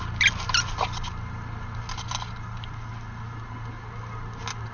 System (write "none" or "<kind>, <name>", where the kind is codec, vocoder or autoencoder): none